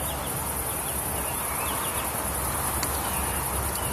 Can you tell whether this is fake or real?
real